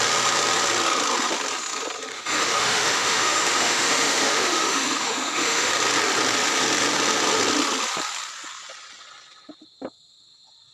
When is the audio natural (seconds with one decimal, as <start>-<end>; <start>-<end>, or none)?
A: 0.0-2.1; 5.7-10.7